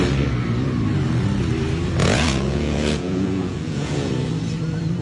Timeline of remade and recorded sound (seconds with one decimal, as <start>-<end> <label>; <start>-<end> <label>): 0.0-2.0 recorded; 2.0-4.1 remade; 4.1-5.0 recorded